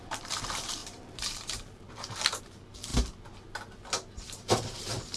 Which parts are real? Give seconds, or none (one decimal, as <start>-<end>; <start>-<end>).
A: 2.9-4.1